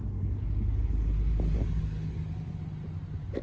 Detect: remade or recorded recorded